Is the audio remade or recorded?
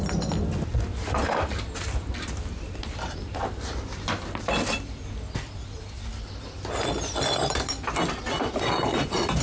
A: recorded